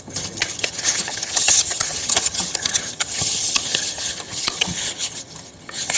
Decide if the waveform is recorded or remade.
remade